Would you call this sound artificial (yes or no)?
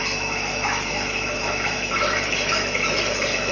yes